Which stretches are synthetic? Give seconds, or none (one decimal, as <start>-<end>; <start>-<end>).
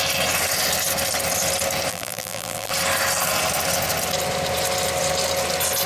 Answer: 1.9-2.7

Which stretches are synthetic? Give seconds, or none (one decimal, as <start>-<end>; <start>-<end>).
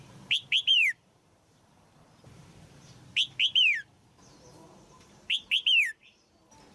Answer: 0.7-2.9; 3.5-6.3